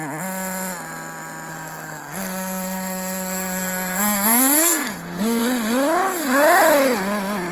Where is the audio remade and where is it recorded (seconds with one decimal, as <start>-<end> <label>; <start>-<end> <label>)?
0.0-1.5 recorded; 1.5-5.4 remade; 5.4-7.5 recorded